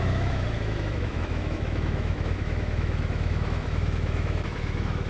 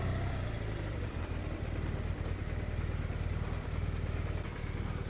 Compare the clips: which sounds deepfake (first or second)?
first